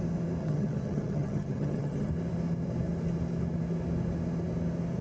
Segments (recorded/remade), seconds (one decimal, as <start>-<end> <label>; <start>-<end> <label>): 0.0-0.4 recorded; 0.4-2.1 remade; 2.1-5.0 recorded

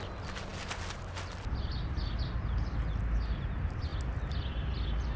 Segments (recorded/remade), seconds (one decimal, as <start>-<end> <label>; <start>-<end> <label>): 0.0-5.2 recorded

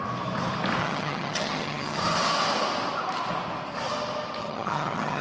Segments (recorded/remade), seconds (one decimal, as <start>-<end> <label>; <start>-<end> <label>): 0.0-0.8 recorded; 0.8-2.0 remade; 2.0-4.4 recorded; 4.4-5.2 remade

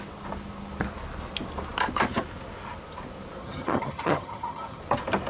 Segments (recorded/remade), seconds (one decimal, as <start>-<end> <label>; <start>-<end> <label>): 0.0-3.4 recorded; 3.4-4.8 remade; 4.8-5.3 recorded

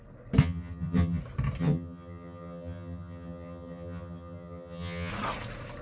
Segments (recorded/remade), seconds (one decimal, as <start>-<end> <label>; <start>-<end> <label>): 0.0-0.4 recorded; 0.4-1.2 remade; 1.2-1.6 recorded; 1.6-5.1 remade; 5.1-5.8 recorded

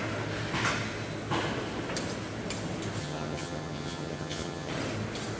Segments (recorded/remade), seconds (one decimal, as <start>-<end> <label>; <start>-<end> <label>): 0.0-3.0 recorded; 3.0-4.7 remade; 4.7-5.4 recorded